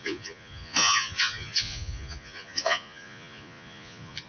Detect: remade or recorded remade